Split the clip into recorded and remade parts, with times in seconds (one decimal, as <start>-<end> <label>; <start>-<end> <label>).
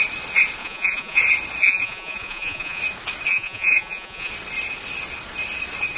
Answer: 0.0-0.6 recorded; 0.6-1.2 remade; 1.2-1.6 recorded; 1.6-2.8 remade; 2.8-3.3 recorded; 3.3-4.3 remade; 4.3-6.0 recorded